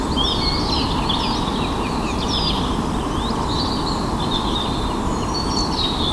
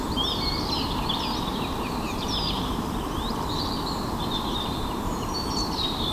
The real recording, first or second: first